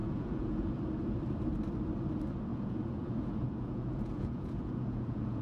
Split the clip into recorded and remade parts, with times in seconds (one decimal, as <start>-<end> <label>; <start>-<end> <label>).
0.0-0.7 remade; 0.7-2.5 recorded; 2.5-5.4 remade